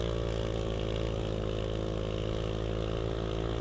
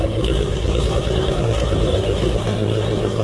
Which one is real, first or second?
first